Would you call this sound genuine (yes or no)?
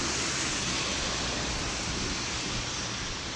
yes